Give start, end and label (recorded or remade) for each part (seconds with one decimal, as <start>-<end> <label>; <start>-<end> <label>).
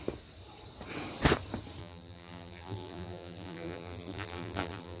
0.0-1.8 recorded; 1.8-5.0 remade